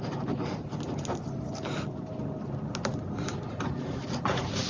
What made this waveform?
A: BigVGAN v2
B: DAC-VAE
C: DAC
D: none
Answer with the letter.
D